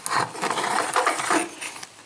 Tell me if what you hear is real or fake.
real